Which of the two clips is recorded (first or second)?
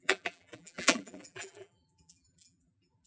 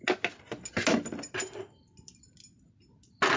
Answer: second